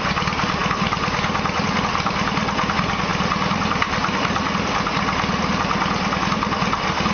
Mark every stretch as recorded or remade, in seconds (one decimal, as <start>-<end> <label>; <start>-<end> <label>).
0.0-7.1 recorded